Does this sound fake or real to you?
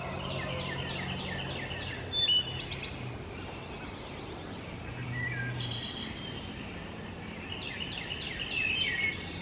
fake